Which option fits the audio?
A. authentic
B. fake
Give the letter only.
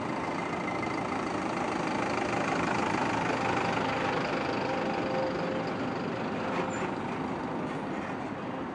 A